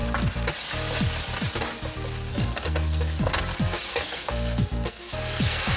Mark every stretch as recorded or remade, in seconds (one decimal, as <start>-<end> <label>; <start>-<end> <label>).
0.0-2.3 recorded; 2.3-3.3 remade; 3.3-3.9 recorded; 3.9-5.8 remade